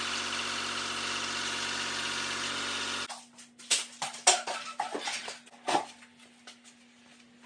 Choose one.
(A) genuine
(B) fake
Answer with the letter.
A